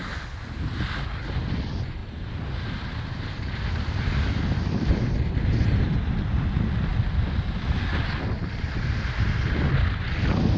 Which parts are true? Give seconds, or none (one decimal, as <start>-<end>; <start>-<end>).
0.0-10.6